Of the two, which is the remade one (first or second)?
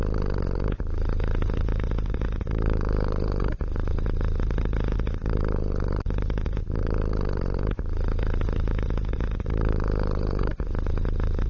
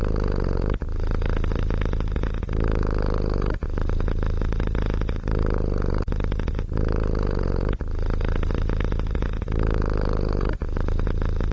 first